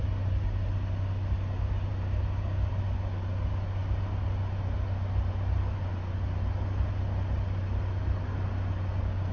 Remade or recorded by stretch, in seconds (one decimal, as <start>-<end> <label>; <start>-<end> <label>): 0.0-9.3 recorded